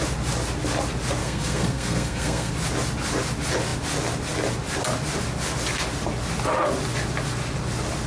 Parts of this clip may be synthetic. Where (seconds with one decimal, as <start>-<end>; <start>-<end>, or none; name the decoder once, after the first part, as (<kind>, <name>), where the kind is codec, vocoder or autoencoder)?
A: 1.2-2.5 (codec, SNAC)